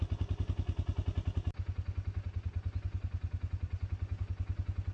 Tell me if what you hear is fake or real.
real